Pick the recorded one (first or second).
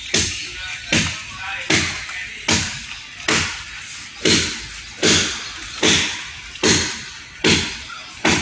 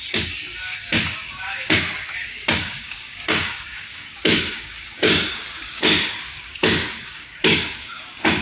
first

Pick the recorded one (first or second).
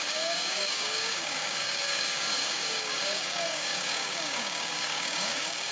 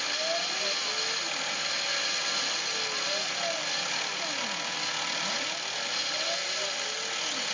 second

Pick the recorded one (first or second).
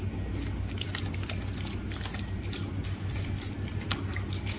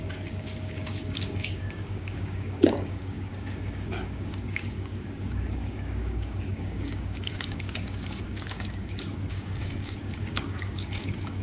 first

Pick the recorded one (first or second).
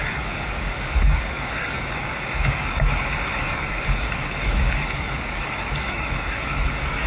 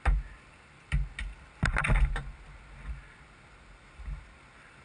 second